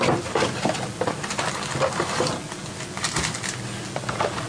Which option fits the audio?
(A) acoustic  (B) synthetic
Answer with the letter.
A